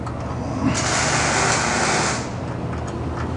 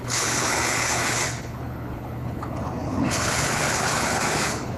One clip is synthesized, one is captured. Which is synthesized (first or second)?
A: second